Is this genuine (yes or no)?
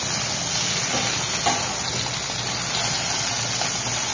yes